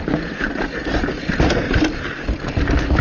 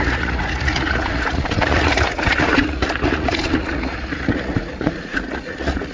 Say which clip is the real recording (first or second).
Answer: first